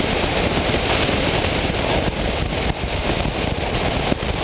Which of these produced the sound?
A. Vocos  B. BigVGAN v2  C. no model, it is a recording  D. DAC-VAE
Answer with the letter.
C